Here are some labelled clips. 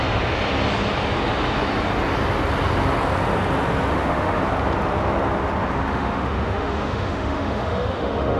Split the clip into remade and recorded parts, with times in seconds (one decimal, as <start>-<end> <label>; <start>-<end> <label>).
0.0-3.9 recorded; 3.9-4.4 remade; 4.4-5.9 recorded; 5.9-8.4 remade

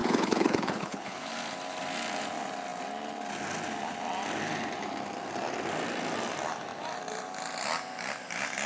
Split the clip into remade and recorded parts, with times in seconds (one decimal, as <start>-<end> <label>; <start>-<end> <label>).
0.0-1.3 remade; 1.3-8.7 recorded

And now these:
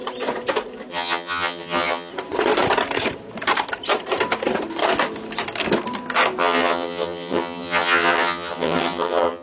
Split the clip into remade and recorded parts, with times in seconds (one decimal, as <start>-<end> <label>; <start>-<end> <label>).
0.0-0.9 recorded; 0.9-2.1 remade; 2.1-6.4 recorded; 6.4-9.4 remade